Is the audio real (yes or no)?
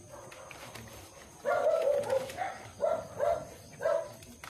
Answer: yes